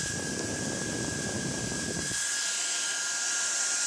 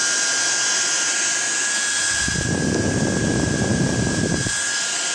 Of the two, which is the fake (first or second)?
first